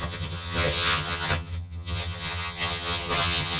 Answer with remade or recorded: remade